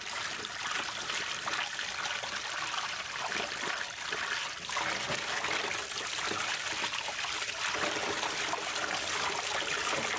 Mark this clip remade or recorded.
recorded